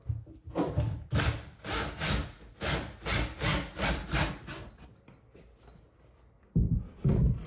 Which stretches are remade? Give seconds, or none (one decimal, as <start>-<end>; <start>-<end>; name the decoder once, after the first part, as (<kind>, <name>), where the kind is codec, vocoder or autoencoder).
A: none